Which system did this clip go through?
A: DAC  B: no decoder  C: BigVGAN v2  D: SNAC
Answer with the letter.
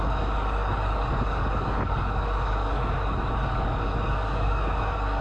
A